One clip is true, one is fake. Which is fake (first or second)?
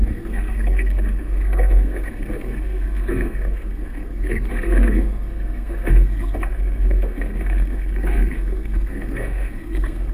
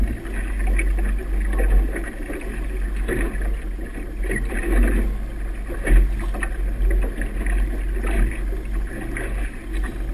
first